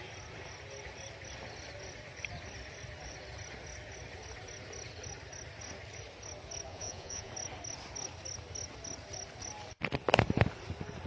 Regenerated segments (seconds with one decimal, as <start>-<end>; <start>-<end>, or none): 6.7-7.3